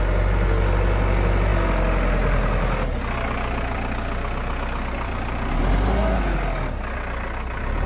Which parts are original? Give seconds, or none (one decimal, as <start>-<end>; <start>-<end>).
0.0-7.9